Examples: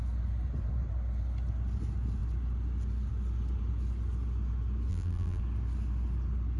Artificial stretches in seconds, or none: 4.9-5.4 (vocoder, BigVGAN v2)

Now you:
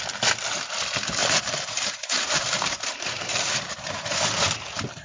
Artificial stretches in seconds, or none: 1.2-4.2 (vocoder, BigVGAN v2)

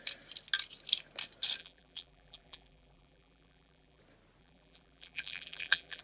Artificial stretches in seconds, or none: 1.6-4.0 (vocoder, BigVGAN v2); 4.4-6.0

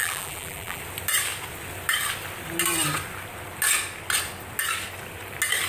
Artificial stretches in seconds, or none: 0.0-0.8 (vocoder, BigVGAN v2)

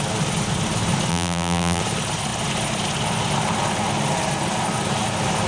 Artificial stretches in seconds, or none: 1.1-1.8 (vocoder, BigVGAN v2)

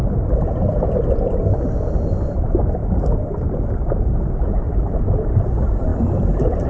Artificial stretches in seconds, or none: 0.0-1.6 (vocoder, BigVGAN v2)

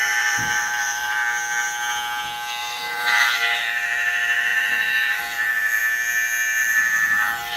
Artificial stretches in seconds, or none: 0.0-1.2 (vocoder, BigVGAN v2); 2.6-5.8; 6.6-7.6